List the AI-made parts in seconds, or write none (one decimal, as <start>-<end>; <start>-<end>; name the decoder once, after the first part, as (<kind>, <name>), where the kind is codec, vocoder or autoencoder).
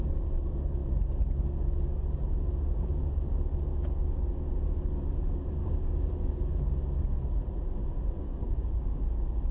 5.6-6.6 (codec, DAC); 8.2-9.0